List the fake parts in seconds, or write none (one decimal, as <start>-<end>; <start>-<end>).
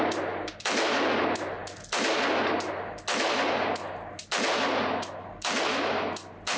none